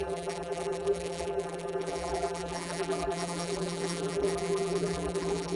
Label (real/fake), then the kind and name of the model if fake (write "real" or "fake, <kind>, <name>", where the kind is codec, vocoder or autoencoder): fake, vocoder, BigVGAN v2